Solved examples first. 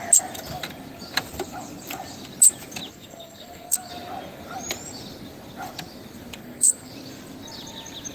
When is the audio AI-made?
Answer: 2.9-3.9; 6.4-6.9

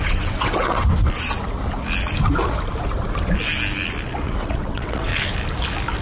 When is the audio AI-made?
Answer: 0.0-0.8; 4.2-5.1

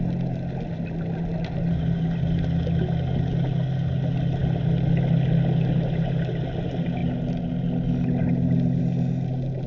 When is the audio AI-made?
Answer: none